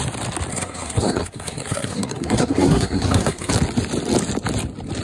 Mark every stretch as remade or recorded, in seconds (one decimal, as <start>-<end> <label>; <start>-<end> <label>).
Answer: 0.0-0.5 recorded; 0.5-3.5 remade; 3.5-5.0 recorded